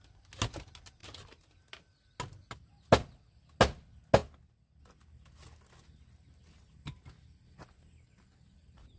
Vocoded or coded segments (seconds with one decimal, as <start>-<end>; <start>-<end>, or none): none